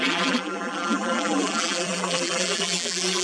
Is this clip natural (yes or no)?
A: no